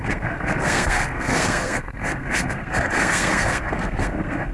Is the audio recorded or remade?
remade